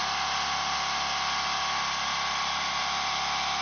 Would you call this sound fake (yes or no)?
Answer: no